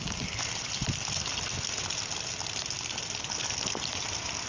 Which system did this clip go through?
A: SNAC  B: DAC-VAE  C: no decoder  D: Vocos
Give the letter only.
C